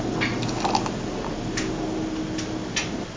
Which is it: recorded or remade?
recorded